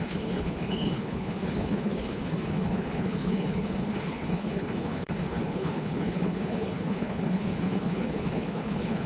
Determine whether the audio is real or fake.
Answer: fake